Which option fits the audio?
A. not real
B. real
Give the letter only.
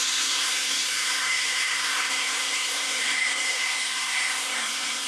A